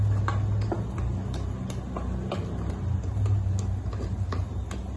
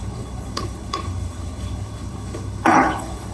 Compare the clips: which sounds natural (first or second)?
first